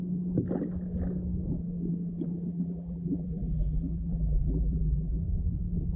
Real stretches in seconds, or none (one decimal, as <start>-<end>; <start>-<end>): 0.0-2.5; 5.2-6.0